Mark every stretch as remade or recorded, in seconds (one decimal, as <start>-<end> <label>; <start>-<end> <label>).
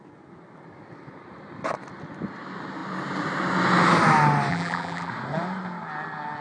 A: 0.0-4.5 recorded; 4.5-5.1 remade; 5.1-6.4 recorded